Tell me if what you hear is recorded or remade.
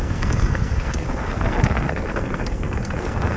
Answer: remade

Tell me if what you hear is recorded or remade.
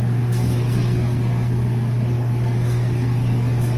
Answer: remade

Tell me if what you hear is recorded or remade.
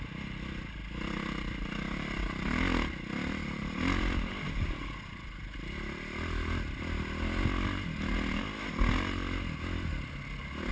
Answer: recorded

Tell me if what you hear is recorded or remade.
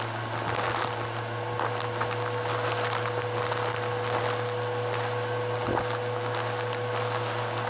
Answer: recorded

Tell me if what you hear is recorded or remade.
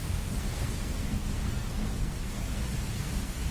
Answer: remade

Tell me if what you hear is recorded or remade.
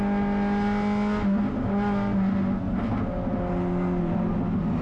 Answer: recorded